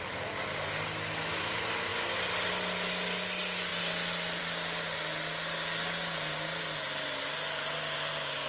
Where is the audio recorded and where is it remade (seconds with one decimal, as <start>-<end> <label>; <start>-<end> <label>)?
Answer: 0.0-8.5 recorded